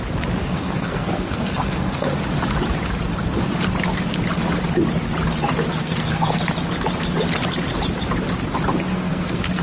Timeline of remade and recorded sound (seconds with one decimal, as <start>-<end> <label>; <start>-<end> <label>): 0.0-0.4 recorded; 0.4-2.1 remade; 2.1-5.8 recorded; 5.8-6.4 remade; 6.4-8.9 recorded; 8.9-9.6 remade